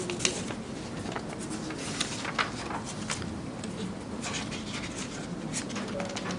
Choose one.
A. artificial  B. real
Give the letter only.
B